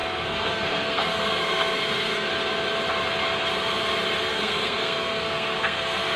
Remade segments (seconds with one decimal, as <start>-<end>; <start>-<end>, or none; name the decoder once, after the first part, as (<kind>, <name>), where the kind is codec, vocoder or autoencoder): 0.0-2.3 (codec, SNAC); 4.2-6.2